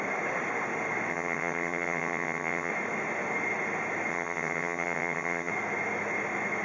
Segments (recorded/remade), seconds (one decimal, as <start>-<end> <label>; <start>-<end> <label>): 0.0-1.1 recorded; 1.1-2.7 remade; 2.7-4.1 recorded; 4.1-5.5 remade; 5.5-6.6 recorded